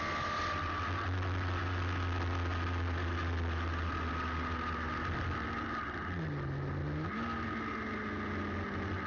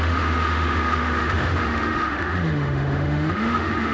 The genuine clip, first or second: first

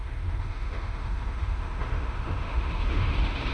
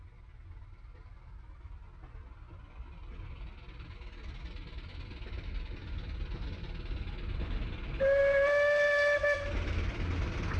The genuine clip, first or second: second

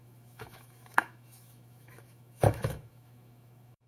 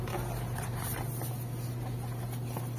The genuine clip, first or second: second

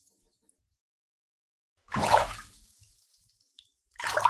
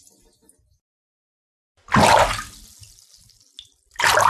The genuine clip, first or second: second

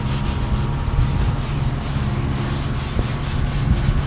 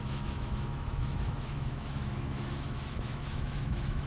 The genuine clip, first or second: first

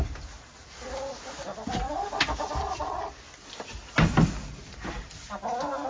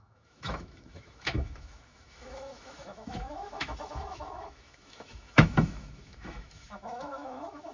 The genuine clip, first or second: first